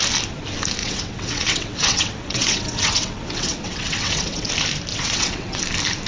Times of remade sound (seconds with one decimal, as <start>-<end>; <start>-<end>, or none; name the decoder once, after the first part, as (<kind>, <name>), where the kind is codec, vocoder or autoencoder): 0.8-4.5 (vocoder, WaveNeXt); 4.9-5.6